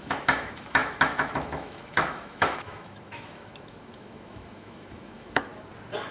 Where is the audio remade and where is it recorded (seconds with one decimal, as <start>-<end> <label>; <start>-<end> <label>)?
0.0-5.5 remade; 5.5-6.1 recorded